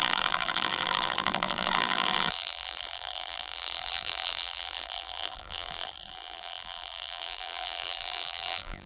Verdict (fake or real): fake